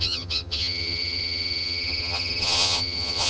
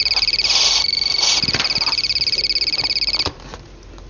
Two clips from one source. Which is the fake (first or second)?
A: first